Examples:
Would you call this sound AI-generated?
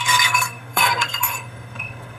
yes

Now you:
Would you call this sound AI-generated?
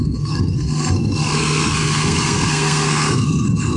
yes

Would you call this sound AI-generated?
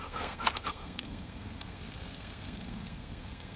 yes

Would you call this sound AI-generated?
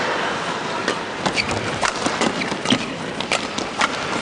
no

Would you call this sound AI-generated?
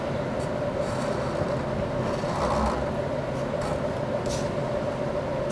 no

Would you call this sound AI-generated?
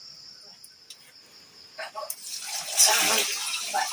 no